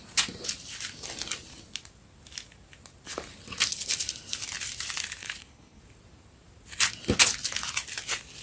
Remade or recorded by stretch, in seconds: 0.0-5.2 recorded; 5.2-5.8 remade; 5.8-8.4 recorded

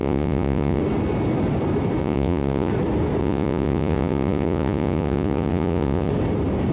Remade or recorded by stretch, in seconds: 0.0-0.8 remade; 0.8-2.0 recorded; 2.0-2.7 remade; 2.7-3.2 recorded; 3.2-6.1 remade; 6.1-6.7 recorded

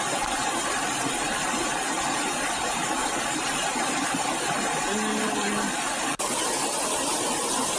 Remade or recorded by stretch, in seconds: 0.0-7.8 recorded